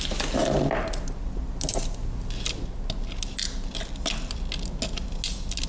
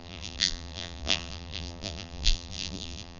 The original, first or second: first